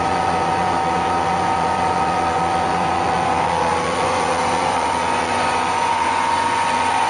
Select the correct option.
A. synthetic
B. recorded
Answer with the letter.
A